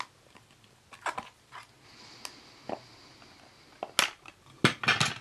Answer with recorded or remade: recorded